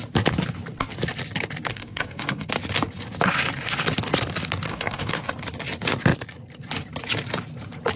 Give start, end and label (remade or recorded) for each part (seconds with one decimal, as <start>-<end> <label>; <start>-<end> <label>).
0.0-1.7 recorded; 1.7-2.5 remade; 2.5-4.7 recorded; 4.7-5.3 remade; 5.3-8.0 recorded